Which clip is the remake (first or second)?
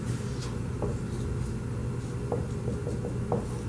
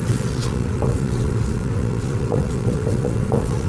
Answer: second